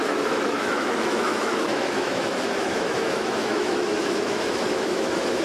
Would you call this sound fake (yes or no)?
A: yes